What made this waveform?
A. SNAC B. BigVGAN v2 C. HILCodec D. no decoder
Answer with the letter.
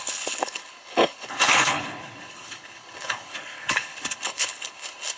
C